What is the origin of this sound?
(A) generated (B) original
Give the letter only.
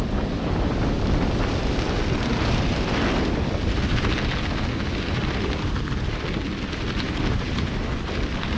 B